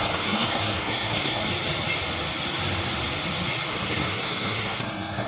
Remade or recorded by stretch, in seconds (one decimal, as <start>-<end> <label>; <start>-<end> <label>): 0.0-1.4 remade; 1.4-3.7 recorded; 3.7-5.3 remade